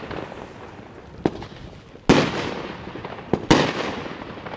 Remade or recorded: recorded